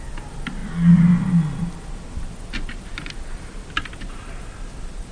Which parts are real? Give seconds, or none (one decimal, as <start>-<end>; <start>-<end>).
0.0-5.1